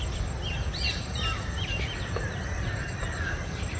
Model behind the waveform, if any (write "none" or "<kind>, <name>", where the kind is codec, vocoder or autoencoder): vocoder, BigVGAN v2